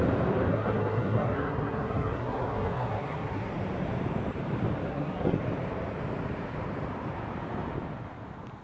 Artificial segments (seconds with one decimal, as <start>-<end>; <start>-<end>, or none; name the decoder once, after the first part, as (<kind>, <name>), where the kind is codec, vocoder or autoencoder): 0.5-3.5 (codec, SNAC); 4.9-5.4